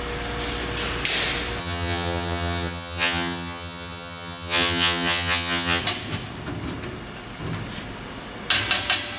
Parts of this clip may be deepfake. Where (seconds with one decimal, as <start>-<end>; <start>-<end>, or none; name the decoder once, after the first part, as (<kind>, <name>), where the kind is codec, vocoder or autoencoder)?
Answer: 1.6-5.8 (vocoder, HiFi-GAN)